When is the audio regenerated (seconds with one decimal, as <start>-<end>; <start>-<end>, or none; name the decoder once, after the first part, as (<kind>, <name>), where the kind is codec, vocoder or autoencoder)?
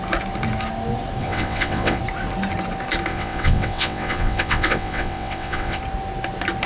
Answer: 1.2-2.0 (vocoder, WaveNeXt); 3.1-5.8